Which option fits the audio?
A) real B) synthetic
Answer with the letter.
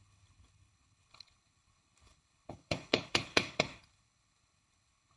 B